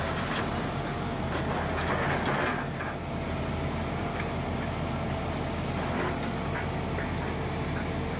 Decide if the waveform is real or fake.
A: real